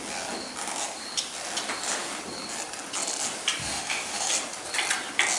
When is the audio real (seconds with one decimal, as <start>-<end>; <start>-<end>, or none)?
0.0-3.7; 4.3-5.4